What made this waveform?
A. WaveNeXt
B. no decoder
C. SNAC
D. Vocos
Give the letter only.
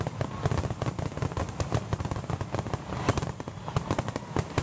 B